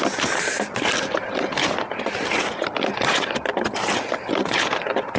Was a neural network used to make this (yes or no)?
no